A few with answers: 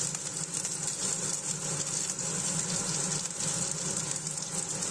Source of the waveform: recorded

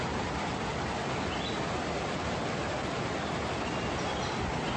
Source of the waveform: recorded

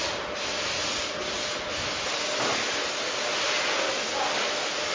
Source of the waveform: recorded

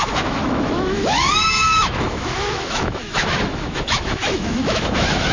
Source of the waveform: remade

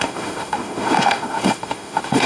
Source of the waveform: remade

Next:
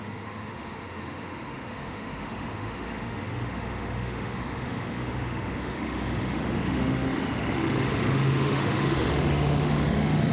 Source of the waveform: remade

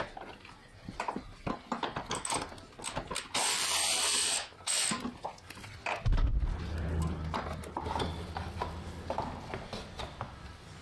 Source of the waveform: recorded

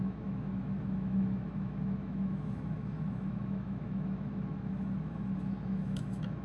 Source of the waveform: remade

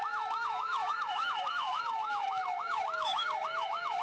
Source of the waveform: remade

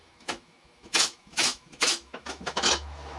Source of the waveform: remade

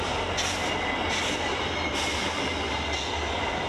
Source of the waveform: recorded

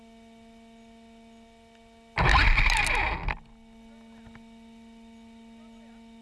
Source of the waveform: recorded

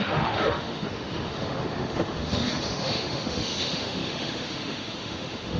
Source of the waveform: remade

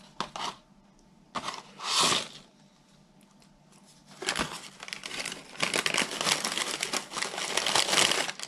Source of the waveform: recorded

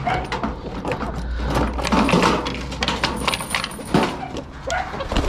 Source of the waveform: recorded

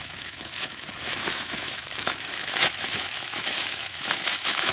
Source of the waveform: remade